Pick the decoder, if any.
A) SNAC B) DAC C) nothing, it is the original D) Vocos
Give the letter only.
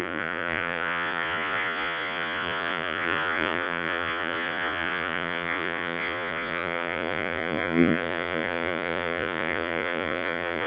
D